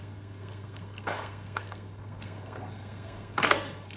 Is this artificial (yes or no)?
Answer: yes